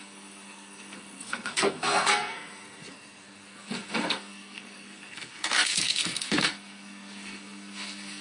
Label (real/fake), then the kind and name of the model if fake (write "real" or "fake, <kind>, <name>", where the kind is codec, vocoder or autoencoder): fake, codec, SNAC